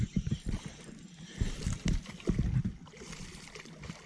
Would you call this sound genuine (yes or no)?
yes